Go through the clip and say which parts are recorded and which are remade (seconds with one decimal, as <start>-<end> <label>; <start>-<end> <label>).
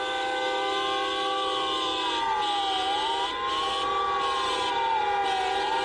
0.0-5.8 recorded